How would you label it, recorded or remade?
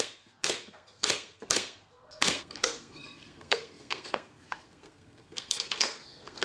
remade